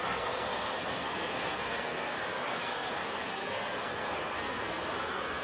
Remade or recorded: remade